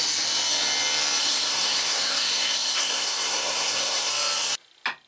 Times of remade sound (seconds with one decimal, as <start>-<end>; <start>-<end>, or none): 1.2-4.1